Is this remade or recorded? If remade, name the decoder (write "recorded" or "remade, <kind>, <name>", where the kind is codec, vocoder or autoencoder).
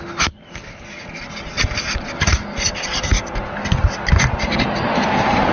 recorded